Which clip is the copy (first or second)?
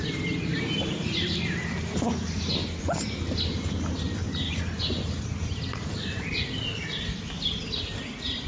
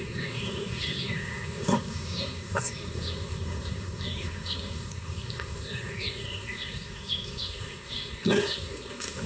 second